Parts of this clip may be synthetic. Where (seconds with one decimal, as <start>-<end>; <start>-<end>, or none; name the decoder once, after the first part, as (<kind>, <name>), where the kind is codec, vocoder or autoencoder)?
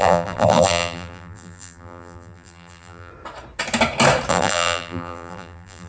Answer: 0.0-3.1 (vocoder, BigVGAN v2); 4.3-5.9